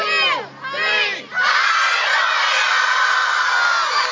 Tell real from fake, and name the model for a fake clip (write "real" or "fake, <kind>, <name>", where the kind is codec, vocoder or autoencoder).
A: real